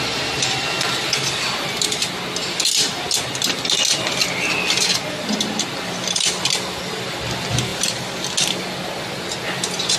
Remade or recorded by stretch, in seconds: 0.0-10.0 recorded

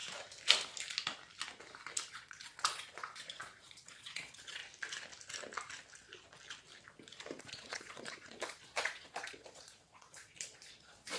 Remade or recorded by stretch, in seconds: 0.0-2.1 recorded; 2.1-4.6 remade; 4.6-7.4 recorded; 7.4-11.2 remade

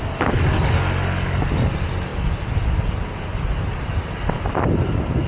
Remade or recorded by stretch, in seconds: 0.0-5.3 recorded

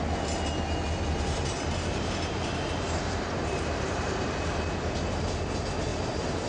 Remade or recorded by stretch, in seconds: 0.0-1.1 recorded; 1.1-4.4 remade; 4.4-5.9 recorded; 5.9-6.5 remade

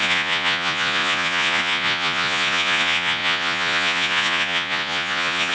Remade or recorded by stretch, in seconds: 0.0-5.5 remade

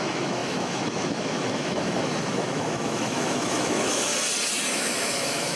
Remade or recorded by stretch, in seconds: 0.0-4.1 remade; 4.1-4.7 recorded; 4.7-5.6 remade

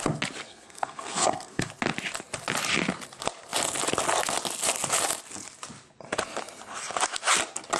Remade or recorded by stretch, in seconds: 0.0-0.5 recorded; 0.5-1.7 remade; 1.7-7.8 recorded